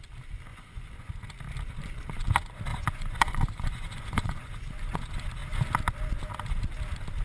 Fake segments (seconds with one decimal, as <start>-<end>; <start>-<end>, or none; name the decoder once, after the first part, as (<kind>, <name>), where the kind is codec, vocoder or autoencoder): 0.5-1.1 (vocoder, Vocos); 2.7-5.0